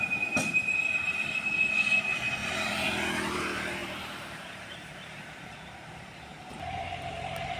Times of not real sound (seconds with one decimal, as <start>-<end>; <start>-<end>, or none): 2.4-2.9; 3.8-7.6

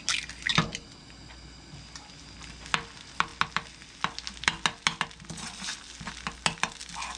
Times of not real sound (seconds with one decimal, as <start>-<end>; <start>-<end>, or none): none

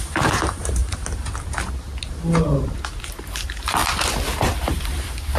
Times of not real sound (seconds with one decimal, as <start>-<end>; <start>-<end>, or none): 0.0-0.8; 2.6-3.8; 4.4-5.4